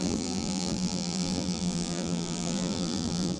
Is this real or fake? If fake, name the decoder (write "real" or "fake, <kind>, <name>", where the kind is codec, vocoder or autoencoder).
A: fake, vocoder, BigVGAN v2